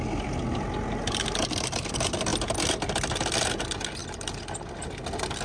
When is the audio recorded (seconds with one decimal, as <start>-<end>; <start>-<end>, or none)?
0.0-5.4

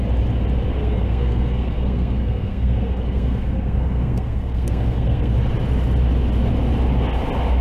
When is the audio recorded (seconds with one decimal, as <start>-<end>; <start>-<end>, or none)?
0.0-0.7; 5.3-7.6